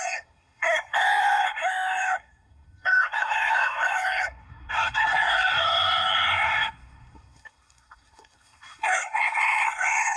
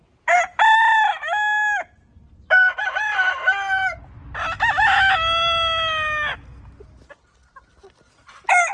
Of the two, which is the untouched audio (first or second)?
second